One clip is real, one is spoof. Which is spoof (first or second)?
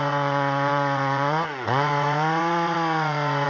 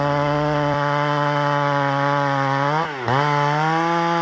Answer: first